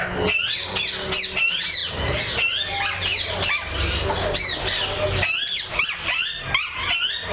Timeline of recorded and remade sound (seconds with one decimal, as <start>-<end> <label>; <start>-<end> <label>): 0.0-7.3 recorded